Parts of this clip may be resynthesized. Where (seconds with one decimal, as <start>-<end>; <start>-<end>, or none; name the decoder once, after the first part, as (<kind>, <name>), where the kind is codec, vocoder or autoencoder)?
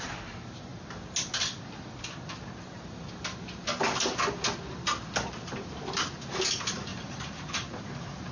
0.0-0.7 (vocoder, BigVGAN v2); 5.3-8.3